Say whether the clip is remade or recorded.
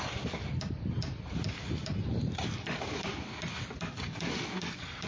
recorded